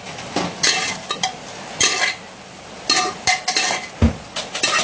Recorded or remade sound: recorded